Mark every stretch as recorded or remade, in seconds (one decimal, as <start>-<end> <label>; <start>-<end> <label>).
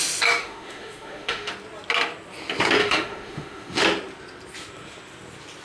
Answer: 0.0-0.4 recorded; 0.4-1.5 remade; 1.5-2.8 recorded; 2.8-3.8 remade; 3.8-5.6 recorded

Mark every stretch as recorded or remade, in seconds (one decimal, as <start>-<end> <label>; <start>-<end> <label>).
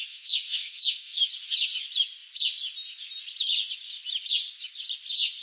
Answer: 0.0-1.3 remade; 1.3-5.4 recorded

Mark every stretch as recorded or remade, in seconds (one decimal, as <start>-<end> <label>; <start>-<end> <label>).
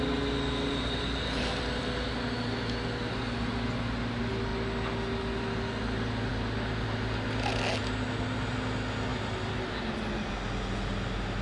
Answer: 0.0-11.4 recorded